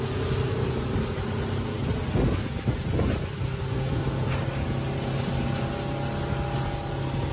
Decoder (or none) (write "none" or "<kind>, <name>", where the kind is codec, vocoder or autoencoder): none